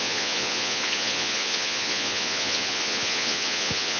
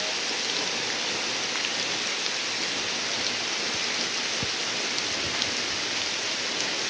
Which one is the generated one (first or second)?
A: first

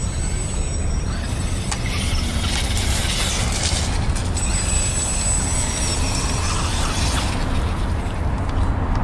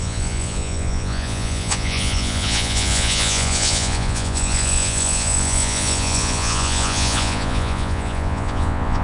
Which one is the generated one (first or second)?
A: second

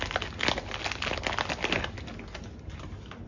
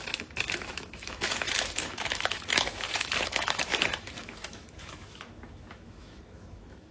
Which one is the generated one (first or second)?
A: second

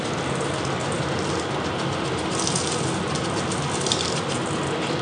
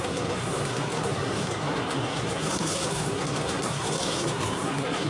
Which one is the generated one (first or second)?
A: second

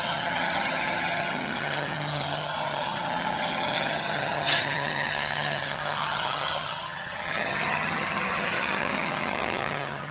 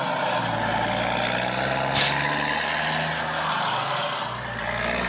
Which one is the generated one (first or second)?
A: first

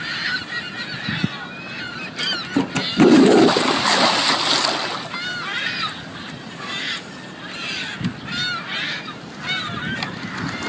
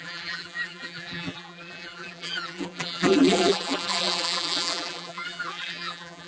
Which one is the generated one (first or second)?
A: second